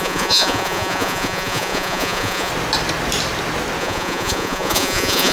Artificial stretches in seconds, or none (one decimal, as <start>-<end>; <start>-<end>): 0.0-2.5; 3.8-5.3